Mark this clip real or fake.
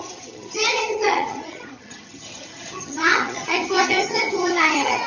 fake